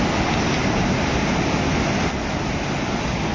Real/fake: real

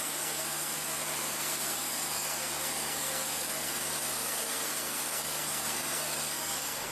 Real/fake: fake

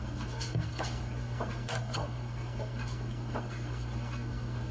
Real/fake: fake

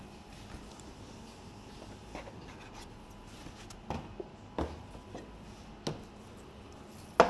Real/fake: real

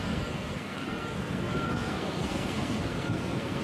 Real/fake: fake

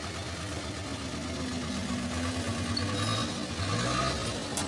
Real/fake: real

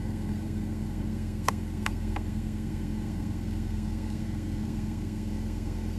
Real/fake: fake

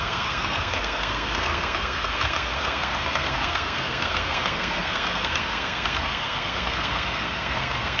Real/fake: fake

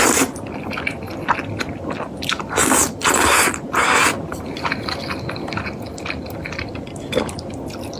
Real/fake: real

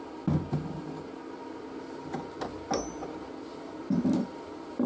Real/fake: real